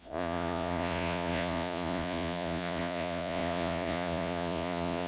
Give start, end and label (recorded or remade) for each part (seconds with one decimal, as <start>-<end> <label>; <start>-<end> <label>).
0.0-5.1 remade